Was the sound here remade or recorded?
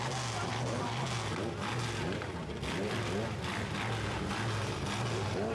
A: recorded